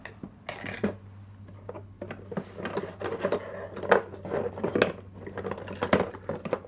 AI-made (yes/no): no